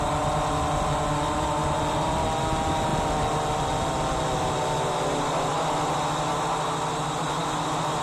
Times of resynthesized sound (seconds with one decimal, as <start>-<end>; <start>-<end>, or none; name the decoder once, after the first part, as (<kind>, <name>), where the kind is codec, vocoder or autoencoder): none